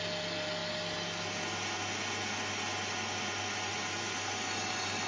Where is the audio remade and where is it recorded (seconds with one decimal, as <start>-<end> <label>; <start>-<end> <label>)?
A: 0.0-5.1 recorded

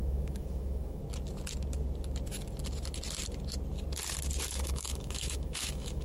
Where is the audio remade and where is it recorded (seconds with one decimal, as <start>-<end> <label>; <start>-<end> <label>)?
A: 0.0-1.0 remade; 1.0-4.5 recorded; 4.5-6.0 remade